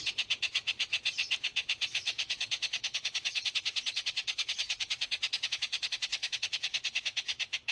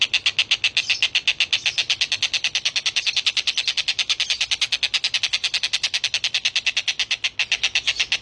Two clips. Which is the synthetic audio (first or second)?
first